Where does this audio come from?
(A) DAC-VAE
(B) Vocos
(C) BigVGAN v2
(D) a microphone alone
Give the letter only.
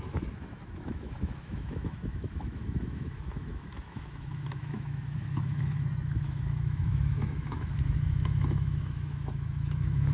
A